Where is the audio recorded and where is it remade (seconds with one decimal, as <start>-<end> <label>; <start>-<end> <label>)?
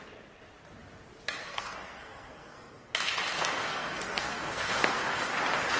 0.0-1.4 recorded; 1.4-2.9 remade; 2.9-3.3 recorded; 3.3-5.3 remade; 5.3-5.8 recorded